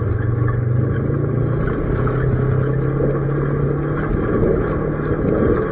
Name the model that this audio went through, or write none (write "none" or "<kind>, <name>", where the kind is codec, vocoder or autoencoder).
none